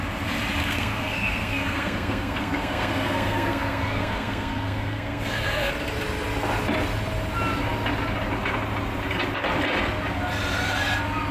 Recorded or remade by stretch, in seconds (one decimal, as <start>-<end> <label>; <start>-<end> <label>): 0.0-0.6 recorded; 0.6-5.7 remade; 5.7-11.3 recorded